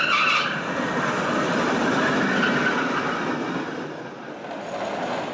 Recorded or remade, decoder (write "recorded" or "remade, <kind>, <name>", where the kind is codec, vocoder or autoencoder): recorded